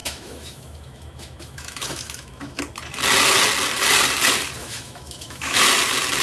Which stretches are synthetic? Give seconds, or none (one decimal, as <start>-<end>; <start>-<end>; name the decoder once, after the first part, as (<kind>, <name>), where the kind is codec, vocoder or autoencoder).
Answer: 0.0-2.6 (autoencoder, DAC-VAE); 4.6-5.6